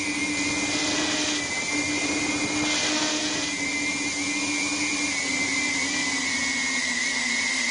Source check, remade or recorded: recorded